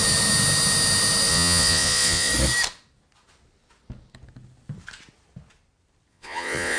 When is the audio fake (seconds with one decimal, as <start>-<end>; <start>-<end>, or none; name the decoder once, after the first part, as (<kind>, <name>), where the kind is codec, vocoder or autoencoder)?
1.3-2.3 (vocoder, Vocos); 6.1-6.8